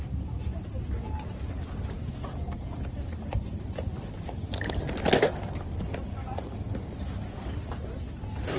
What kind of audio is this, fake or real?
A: real